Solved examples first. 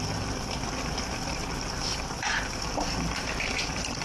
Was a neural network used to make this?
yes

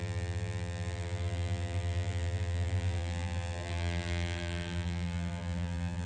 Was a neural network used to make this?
yes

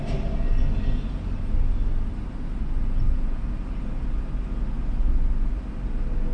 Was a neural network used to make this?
no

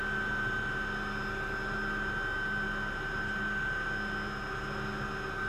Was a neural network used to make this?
no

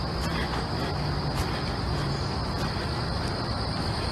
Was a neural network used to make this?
no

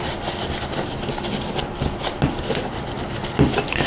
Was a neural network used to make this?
no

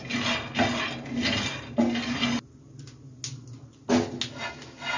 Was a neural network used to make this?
no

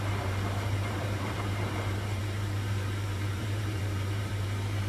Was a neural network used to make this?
yes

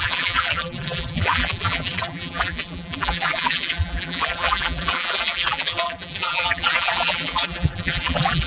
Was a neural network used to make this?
yes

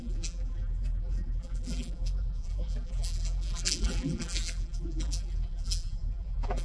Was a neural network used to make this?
yes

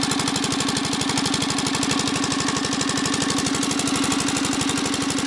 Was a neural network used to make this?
no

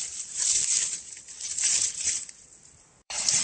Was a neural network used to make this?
yes